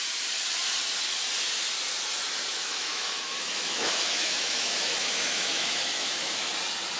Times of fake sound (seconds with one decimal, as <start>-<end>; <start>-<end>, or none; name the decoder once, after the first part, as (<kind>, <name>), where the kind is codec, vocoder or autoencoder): 2.5-6.5 (autoencoder, DAC-VAE)